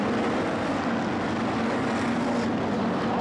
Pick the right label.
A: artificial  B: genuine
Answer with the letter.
B